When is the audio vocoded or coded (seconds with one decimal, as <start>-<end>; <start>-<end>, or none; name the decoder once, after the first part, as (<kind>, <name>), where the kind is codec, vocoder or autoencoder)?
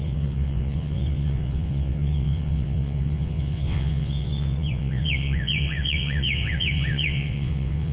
0.0-7.9 (vocoder, WaveNeXt)